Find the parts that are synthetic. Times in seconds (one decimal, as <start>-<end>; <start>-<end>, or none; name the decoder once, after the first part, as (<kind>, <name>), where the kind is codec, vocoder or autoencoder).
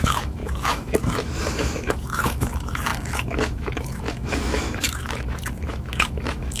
0.0-6.6 (autoencoder, DAC-VAE)